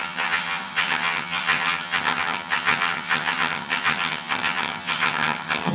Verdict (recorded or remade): remade